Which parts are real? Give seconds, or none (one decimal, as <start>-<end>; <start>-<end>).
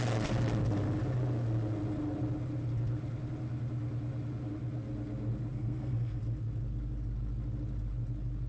0.0-5.5; 6.2-8.5